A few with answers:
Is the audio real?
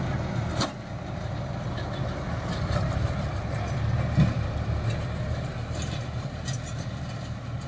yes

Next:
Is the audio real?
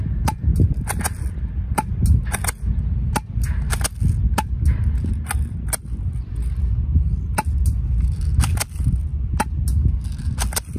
yes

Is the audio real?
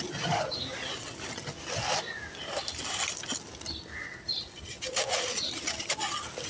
yes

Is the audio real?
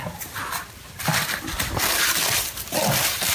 no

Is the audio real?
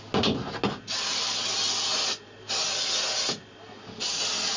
yes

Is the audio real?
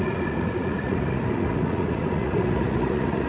no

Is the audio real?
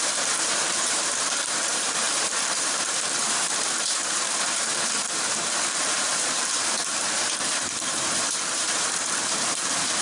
no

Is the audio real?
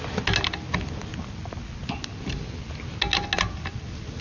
yes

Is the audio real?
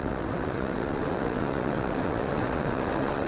no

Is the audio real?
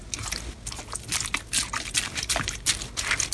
yes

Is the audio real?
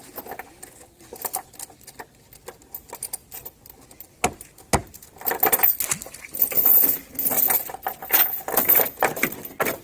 yes